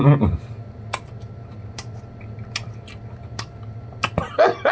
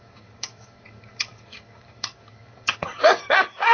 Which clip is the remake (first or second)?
second